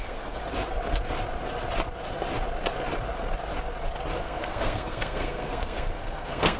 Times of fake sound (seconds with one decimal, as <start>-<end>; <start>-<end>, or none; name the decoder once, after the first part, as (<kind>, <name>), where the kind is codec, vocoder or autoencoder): 0.0-0.4 (codec, SNAC); 4.2-6.6